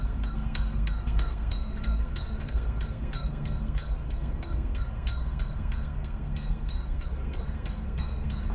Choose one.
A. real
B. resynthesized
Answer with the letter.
B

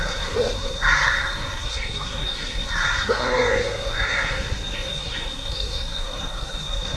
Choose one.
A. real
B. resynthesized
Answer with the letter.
B